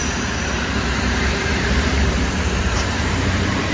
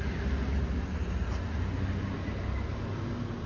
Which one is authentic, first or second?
second